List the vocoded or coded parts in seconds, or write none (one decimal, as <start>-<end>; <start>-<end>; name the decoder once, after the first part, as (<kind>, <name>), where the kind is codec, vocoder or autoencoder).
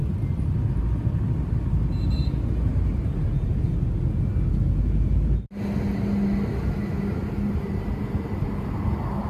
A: none